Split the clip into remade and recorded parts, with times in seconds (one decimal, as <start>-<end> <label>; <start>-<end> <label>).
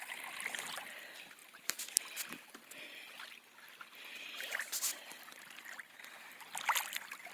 0.0-7.3 recorded